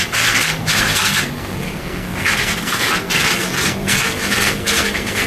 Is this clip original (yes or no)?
no